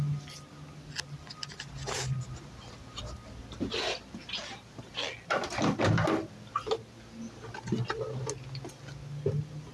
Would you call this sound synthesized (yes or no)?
no